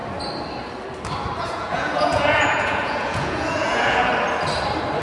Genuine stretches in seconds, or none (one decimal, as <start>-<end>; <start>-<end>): 0.0-1.4; 4.1-5.0